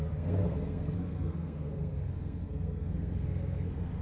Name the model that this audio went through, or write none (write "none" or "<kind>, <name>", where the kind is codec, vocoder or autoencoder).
codec, SNAC